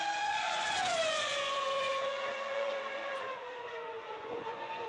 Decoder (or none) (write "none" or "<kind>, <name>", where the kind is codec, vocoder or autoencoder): vocoder, Vocos